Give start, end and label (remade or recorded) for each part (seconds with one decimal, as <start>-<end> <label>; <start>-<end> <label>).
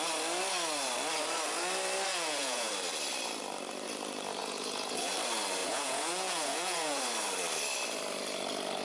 0.0-2.1 recorded; 2.1-2.7 remade; 2.7-4.4 recorded; 4.4-5.1 remade; 5.1-5.6 recorded; 5.6-7.0 remade; 7.0-8.8 recorded